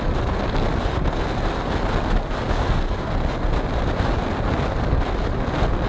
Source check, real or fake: real